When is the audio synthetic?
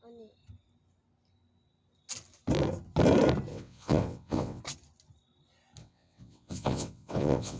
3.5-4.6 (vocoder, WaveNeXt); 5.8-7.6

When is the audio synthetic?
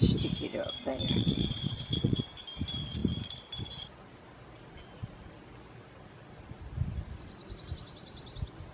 0.9-2.2 (vocoder, WaveNeXt)